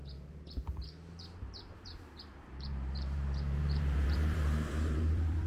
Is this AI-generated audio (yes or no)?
yes